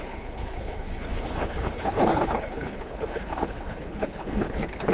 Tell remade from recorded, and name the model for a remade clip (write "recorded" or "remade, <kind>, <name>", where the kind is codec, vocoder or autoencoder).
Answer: remade, codec, HILCodec